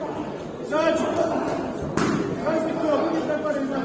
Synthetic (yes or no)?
no